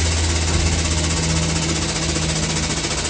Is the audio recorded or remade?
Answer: recorded